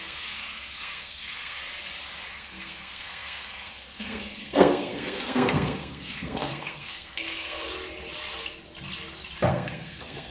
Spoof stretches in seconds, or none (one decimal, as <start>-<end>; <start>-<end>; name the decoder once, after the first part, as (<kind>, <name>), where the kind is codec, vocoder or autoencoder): 0.0-1.6 (codec, SNAC); 2.3-7.7; 9.5-10.3